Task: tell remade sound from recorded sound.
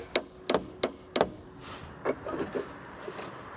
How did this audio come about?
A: recorded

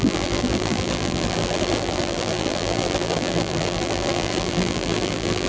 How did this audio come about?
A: remade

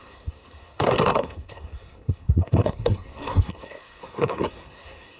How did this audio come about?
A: remade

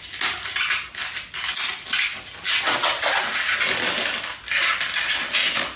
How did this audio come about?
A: recorded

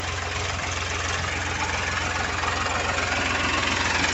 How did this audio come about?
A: recorded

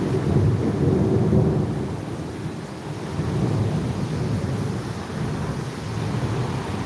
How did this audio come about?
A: recorded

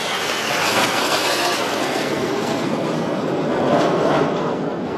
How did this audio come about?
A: remade